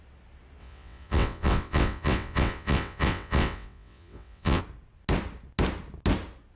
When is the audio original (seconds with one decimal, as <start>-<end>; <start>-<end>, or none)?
0.0-0.6; 4.6-6.6